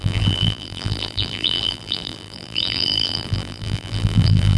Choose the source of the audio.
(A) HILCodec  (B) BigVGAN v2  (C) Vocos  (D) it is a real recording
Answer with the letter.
B